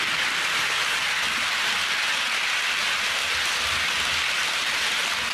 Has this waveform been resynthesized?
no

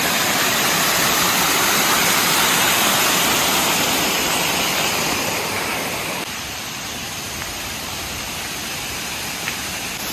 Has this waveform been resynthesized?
yes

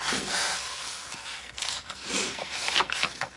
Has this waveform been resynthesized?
yes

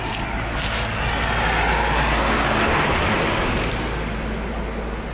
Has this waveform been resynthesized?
no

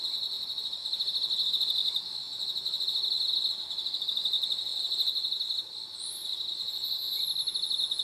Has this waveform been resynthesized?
no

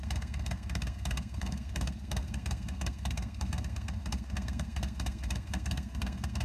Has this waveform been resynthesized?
yes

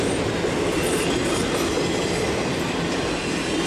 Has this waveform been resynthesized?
no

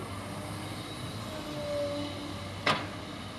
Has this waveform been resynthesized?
no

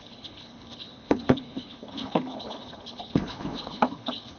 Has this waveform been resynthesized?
yes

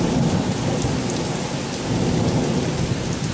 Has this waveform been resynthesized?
no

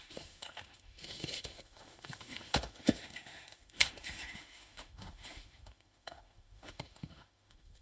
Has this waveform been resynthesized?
yes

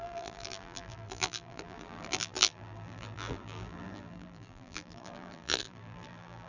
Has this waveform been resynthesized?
yes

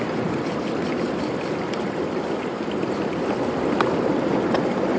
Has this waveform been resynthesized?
no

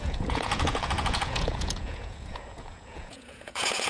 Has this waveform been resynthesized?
yes